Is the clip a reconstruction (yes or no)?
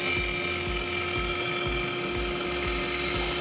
no